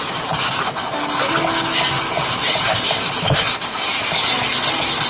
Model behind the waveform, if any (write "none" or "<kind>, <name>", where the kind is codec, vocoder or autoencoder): none